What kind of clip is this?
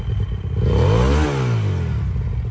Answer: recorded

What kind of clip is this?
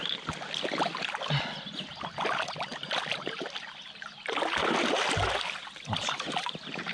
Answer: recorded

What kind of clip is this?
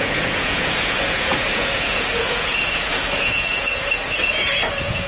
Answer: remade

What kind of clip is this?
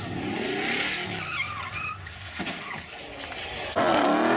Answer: recorded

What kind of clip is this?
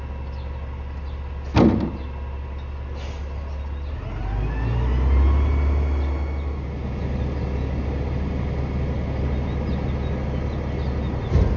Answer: recorded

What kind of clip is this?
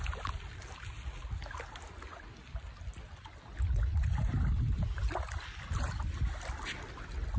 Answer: recorded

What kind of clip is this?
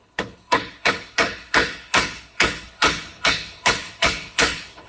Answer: remade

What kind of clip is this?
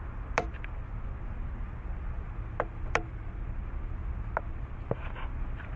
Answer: recorded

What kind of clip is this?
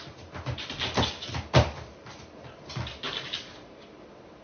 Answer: recorded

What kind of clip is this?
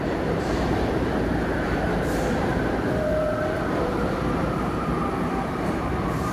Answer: remade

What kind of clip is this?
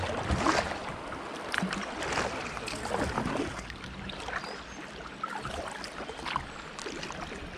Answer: recorded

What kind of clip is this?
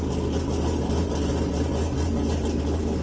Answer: recorded